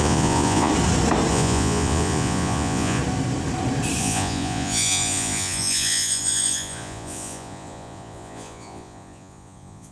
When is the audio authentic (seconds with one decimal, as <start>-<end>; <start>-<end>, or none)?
0.7-1.3; 3.0-4.0